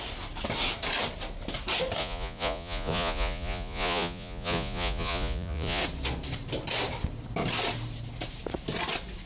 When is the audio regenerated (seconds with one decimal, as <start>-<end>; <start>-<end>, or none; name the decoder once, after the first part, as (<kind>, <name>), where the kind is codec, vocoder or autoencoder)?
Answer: 2.0-5.8 (vocoder, Vocos)